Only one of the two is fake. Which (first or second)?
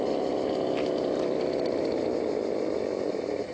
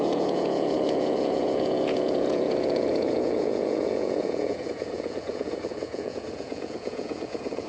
second